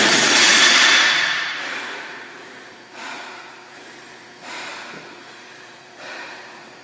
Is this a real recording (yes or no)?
no